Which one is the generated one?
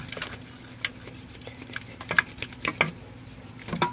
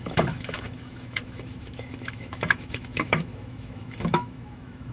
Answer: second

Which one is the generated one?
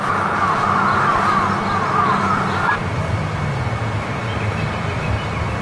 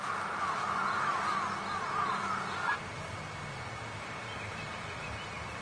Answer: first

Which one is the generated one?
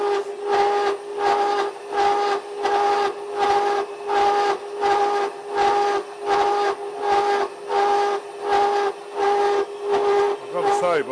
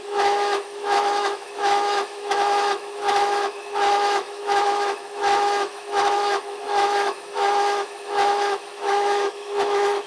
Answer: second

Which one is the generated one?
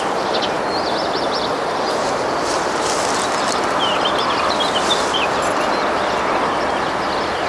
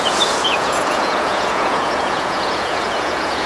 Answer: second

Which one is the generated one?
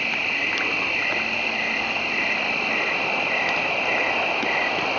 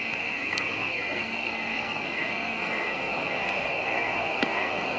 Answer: second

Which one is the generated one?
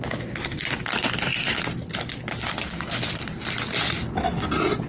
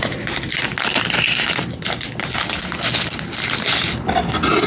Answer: second